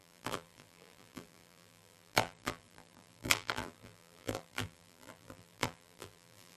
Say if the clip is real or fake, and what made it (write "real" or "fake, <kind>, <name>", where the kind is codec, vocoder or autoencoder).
fake, vocoder, BigVGAN v2